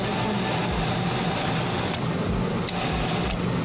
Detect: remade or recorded recorded